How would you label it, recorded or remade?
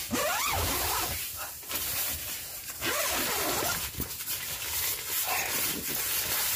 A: recorded